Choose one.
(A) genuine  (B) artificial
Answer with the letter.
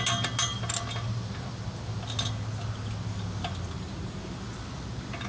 A